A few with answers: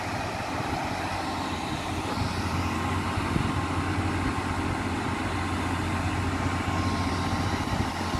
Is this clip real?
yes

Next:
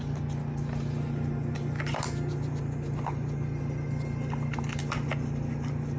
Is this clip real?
yes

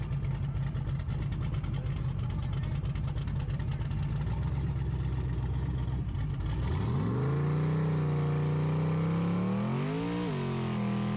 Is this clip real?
yes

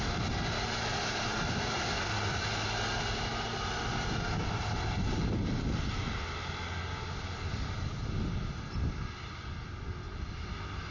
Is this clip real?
yes